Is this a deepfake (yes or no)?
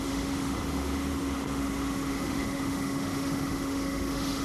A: yes